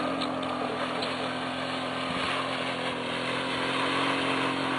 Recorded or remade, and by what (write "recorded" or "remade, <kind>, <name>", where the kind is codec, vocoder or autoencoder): recorded